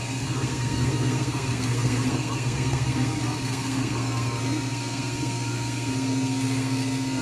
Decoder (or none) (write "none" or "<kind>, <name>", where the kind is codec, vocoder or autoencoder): codec, SNAC